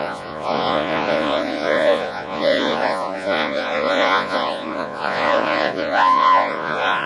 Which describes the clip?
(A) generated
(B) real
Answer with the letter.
A